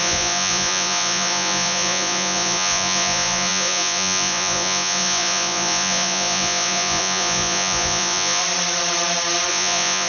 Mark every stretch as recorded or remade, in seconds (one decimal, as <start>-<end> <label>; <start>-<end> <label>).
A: 0.0-8.4 remade; 8.4-9.5 recorded; 9.5-10.1 remade